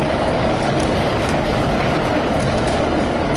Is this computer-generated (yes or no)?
yes